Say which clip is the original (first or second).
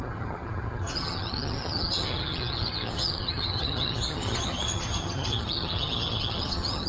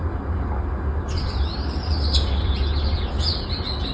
second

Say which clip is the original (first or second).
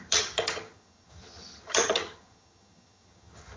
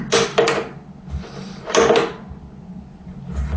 second